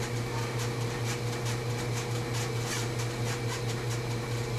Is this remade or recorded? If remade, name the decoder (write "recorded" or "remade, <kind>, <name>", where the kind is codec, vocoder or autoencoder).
recorded